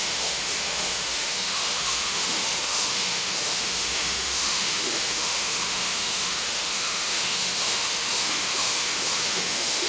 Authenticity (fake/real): fake